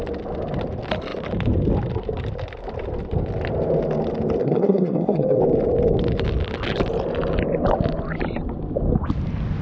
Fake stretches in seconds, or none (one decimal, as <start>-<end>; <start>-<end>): 4.4-5.4